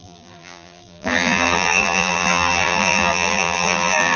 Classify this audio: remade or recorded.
remade